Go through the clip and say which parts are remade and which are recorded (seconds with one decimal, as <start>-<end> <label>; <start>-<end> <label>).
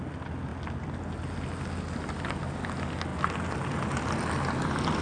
0.0-5.0 recorded